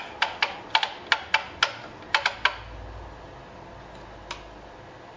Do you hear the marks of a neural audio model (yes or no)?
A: no